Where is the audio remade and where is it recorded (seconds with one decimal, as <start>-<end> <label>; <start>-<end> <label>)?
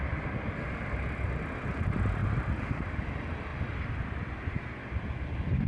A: 0.0-5.7 recorded